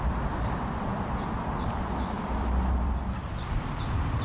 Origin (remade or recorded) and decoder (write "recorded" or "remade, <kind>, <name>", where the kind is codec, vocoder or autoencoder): recorded